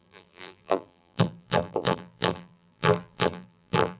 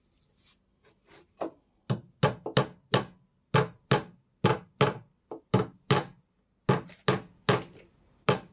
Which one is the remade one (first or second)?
first